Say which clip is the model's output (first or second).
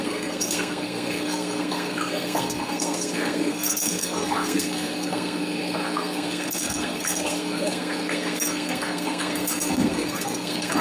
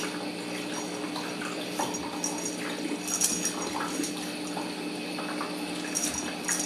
first